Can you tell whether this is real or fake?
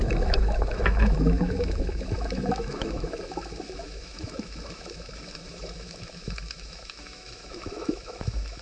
fake